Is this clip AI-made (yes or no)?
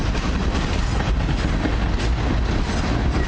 no